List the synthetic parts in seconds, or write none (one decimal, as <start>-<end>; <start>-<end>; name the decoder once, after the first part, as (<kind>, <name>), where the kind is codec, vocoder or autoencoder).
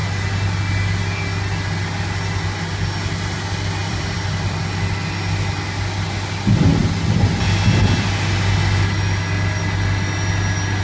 3.8-4.6 (vocoder, BigVGAN v2)